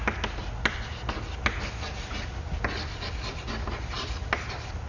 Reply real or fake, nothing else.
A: real